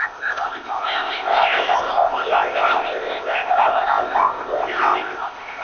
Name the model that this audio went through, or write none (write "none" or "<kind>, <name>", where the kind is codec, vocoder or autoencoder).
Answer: codec, ZipCodec